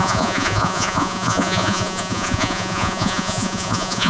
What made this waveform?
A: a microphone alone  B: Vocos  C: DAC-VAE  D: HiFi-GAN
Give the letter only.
B